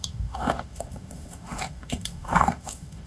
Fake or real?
fake